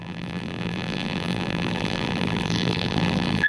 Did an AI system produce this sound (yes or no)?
yes